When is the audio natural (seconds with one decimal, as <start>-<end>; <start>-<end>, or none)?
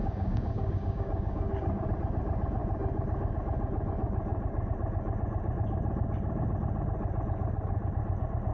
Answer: 1.9-8.5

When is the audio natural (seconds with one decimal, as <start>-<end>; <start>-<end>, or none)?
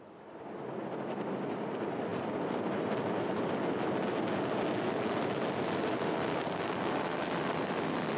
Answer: 0.0-8.2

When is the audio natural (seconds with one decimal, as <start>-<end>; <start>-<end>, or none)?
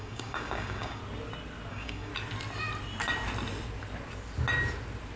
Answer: 1.0-1.7; 2.1-5.2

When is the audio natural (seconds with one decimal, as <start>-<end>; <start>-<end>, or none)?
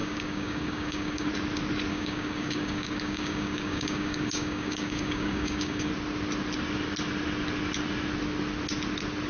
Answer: 1.3-1.9; 5.9-9.3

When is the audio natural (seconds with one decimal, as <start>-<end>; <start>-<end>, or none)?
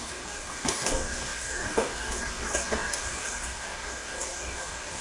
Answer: none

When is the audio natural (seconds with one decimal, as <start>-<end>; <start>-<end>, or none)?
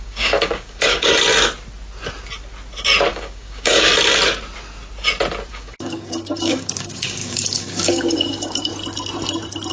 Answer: 1.1-3.1; 3.9-5.5; 8.7-9.7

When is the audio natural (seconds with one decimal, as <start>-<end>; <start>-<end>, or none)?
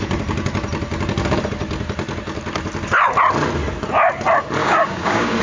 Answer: 0.0-4.6